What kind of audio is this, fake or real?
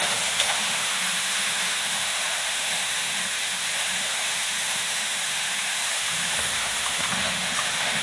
fake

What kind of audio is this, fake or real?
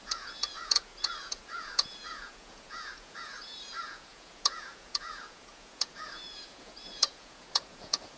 fake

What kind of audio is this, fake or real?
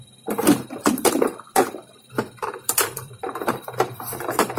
fake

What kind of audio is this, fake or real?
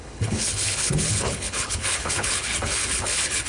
fake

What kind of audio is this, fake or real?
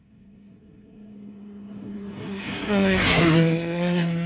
fake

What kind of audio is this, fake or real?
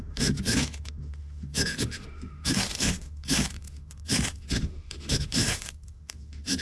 fake